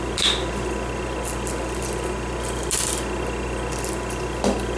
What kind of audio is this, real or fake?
real